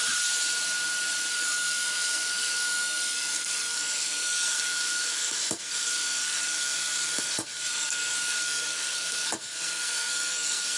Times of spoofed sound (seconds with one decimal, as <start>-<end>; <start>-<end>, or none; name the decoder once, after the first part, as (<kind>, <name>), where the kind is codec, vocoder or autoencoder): 1.3-10.8 (codec, SNAC)